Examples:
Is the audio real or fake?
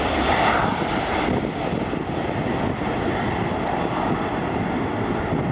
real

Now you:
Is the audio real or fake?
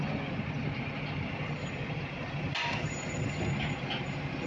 real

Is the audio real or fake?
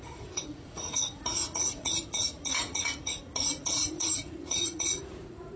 fake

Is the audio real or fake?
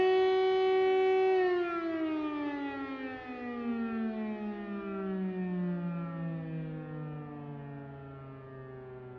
real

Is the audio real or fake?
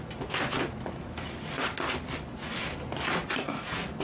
real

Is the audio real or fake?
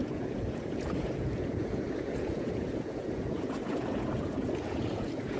fake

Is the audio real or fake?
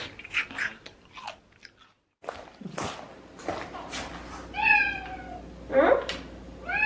real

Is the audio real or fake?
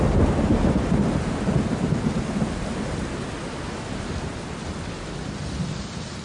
real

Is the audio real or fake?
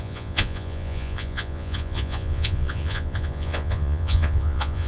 fake